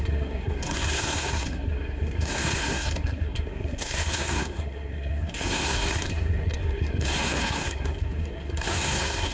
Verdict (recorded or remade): remade